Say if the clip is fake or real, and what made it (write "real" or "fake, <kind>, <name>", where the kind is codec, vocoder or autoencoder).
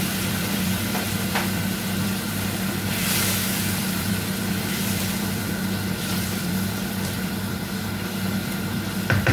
fake, vocoder, BigVGAN v2